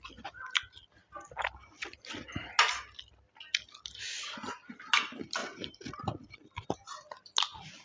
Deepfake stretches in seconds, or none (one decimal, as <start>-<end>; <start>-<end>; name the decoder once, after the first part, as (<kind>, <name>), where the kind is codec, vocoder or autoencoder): none